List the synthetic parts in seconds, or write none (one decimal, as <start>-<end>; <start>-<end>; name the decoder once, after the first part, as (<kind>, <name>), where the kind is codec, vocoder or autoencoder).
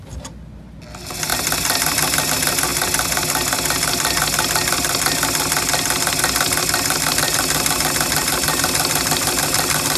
none